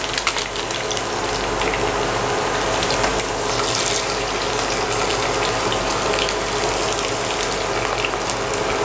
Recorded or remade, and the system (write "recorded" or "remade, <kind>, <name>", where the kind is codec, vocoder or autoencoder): recorded